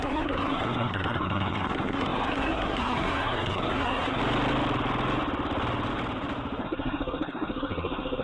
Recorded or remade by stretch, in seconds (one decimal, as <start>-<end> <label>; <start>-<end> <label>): 0.0-4.2 remade; 4.2-6.6 recorded; 6.6-8.2 remade